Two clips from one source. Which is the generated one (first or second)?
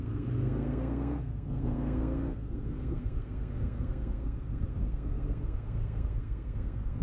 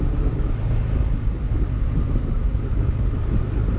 first